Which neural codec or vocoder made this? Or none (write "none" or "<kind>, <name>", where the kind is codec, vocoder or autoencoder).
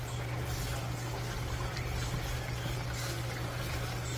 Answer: none